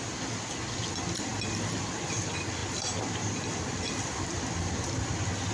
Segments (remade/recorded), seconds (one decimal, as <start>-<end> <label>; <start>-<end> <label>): 0.0-5.5 recorded